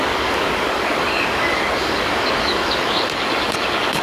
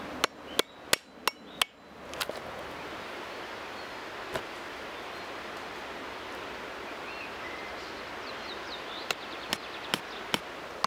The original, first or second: second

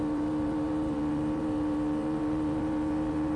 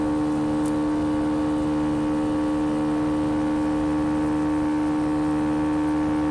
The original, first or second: second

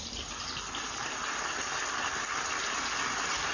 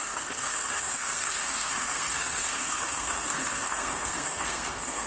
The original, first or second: first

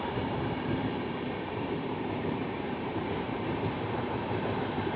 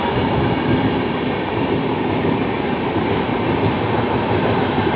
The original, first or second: second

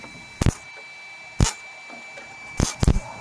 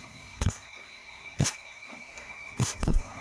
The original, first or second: first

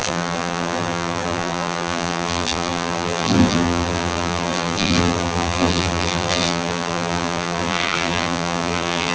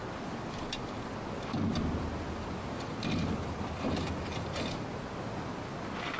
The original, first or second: second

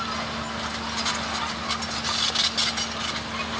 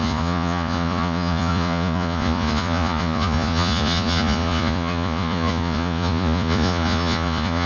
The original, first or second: first